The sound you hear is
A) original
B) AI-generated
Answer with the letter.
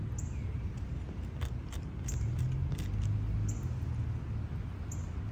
A